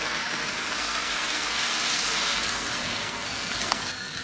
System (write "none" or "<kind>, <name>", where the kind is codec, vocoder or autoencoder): codec, SNAC